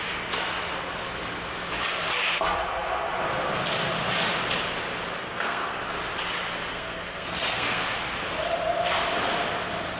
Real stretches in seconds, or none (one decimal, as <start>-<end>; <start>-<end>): 0.0-5.2; 5.8-6.7; 7.8-10.0